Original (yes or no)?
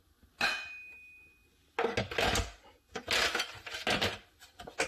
yes